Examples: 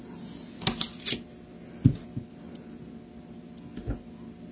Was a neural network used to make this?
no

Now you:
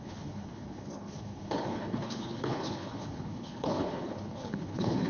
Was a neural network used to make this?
yes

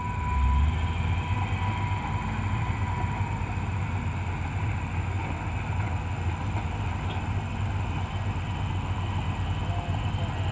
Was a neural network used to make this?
no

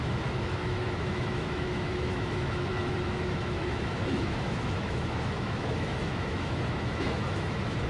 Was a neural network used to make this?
yes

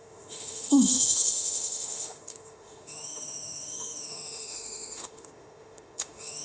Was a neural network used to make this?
yes